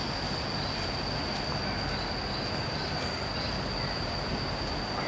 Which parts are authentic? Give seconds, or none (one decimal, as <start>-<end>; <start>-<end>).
0.0-5.1